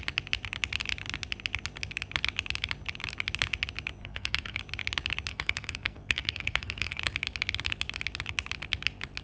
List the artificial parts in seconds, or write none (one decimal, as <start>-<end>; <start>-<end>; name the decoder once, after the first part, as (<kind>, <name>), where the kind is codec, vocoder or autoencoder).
4.0-4.6 (codec, SNAC); 5.3-7.0